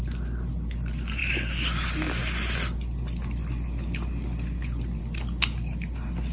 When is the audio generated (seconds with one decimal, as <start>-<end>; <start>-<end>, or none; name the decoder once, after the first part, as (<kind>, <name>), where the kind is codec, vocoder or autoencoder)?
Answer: none